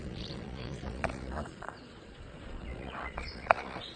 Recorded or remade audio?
remade